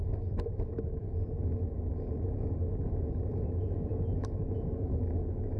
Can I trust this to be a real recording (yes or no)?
no